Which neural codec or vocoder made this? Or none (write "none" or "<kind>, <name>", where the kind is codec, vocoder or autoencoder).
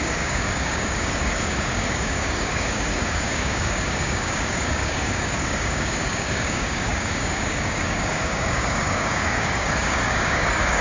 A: codec, DAC